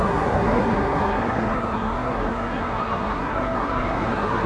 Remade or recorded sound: remade